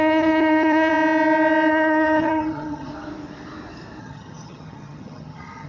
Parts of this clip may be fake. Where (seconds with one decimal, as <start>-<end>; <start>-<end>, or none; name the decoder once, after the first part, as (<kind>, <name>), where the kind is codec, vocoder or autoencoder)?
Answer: 0.0-0.9 (vocoder, HiFi-GAN); 1.7-2.9; 4.0-5.7